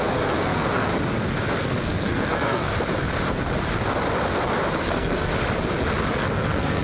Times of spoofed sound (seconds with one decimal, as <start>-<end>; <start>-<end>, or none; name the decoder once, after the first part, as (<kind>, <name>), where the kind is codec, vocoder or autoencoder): 0.0-0.9 (codec, SNAC); 1.6-2.7; 4.7-5.3; 6.1-6.8